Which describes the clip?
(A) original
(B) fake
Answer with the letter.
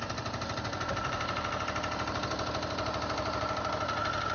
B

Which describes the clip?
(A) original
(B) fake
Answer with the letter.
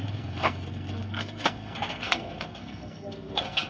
B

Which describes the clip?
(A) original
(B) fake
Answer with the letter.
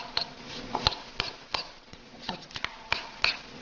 B